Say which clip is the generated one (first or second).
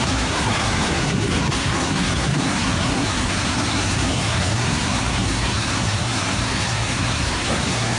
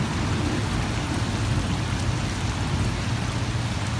first